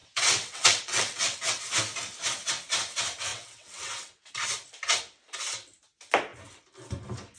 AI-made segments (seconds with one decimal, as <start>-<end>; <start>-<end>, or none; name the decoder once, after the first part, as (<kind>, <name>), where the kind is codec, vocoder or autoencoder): 0.0-1.6 (vocoder, WaveNeXt); 3.3-4.3